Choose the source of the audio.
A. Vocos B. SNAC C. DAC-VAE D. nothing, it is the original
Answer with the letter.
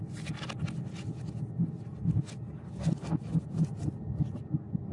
D